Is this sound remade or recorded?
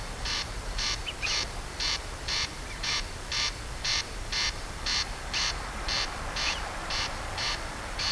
remade